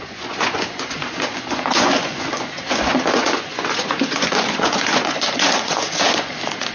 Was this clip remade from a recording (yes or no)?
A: yes